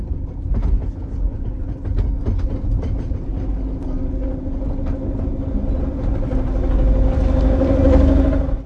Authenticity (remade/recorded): recorded